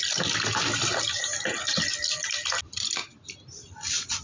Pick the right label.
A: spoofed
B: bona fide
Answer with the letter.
B